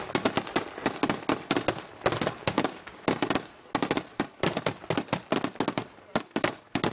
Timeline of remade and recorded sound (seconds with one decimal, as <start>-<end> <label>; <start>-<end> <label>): 0.0-2.4 recorded; 2.4-3.0 remade; 3.0-6.9 recorded